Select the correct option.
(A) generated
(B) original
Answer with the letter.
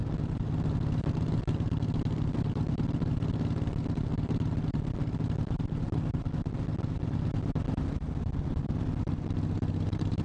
B